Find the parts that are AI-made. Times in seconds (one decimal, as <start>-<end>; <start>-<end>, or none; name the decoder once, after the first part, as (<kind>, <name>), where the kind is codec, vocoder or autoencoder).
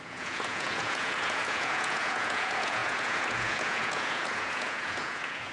0.0-5.5 (vocoder, Vocos)